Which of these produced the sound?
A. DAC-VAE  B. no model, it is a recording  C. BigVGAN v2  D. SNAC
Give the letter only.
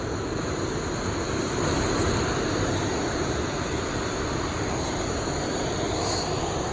B